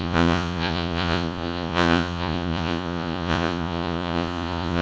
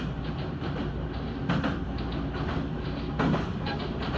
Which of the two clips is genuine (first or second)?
second